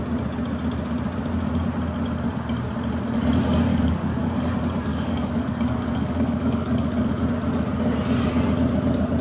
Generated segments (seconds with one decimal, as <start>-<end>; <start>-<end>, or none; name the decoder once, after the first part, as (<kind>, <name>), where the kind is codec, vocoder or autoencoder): 3.7-4.5 (codec, DAC); 4.9-7.2